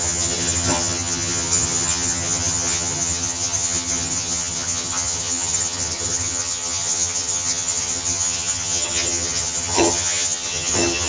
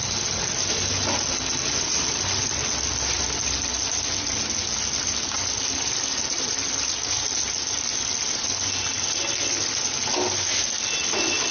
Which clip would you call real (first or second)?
second